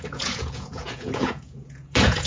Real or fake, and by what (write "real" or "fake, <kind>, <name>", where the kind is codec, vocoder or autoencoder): fake, vocoder, Vocos